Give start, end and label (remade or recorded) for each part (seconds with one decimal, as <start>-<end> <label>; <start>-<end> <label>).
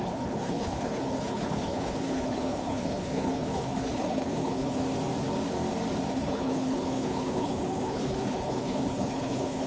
0.0-4.8 remade; 4.8-6.1 recorded; 6.1-9.7 remade